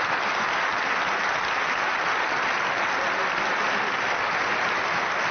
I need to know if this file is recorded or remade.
recorded